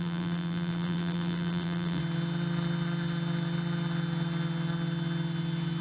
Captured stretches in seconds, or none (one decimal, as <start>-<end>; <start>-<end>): 2.0-5.8